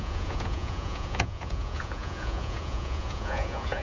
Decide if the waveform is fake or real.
fake